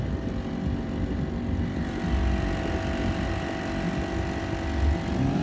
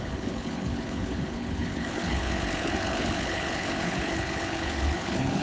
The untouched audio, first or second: first